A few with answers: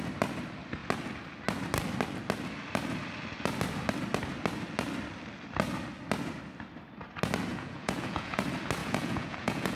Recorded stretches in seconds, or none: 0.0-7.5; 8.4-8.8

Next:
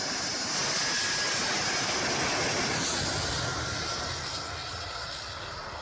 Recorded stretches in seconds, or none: 0.0-4.6; 5.1-5.8

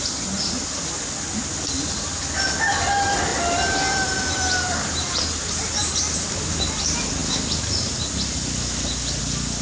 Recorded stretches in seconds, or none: 0.0-3.3; 6.8-9.6